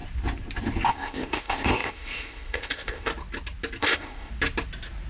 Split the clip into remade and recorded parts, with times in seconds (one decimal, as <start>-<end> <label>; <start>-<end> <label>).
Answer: 0.0-0.9 recorded; 0.9-3.1 remade; 3.1-3.8 recorded; 3.8-4.3 remade; 4.3-5.1 recorded